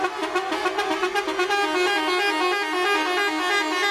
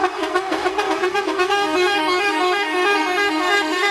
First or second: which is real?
first